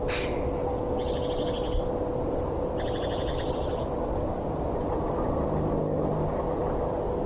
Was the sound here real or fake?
real